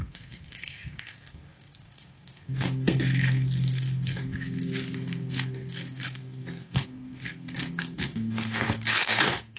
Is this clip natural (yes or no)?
no